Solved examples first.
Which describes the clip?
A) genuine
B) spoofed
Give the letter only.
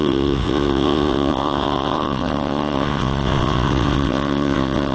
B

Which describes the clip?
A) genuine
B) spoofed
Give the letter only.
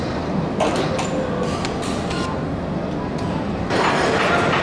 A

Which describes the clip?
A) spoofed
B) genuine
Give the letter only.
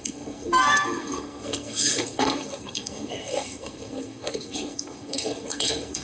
A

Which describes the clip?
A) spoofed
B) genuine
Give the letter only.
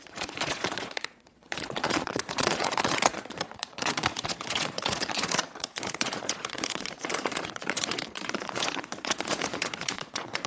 A